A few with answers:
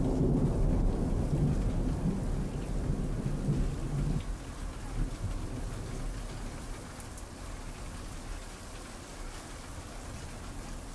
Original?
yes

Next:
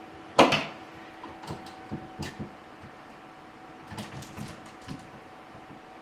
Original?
yes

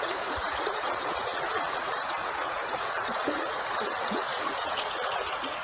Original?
no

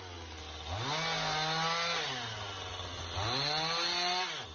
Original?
yes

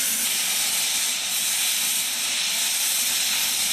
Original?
yes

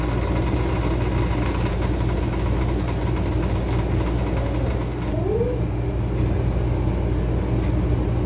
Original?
yes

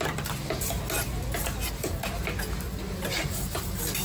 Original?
yes